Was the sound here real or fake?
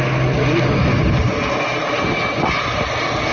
real